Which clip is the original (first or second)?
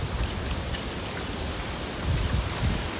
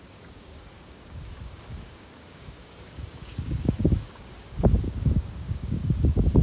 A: first